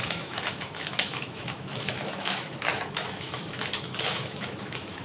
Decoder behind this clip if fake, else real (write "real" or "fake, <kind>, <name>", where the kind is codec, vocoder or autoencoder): fake, autoencoder, DAC-VAE